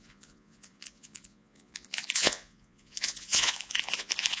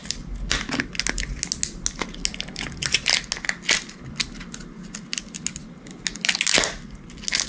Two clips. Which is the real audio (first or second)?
second